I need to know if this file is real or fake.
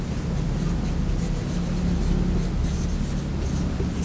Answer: real